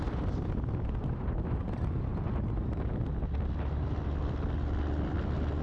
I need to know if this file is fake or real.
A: real